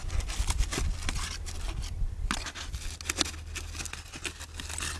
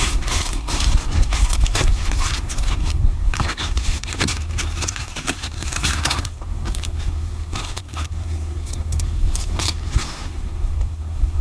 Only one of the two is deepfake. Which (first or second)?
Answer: second